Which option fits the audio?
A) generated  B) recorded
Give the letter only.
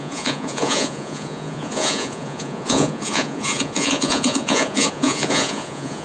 A